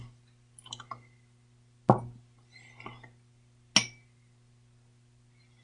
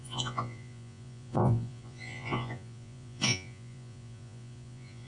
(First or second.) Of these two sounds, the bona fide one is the first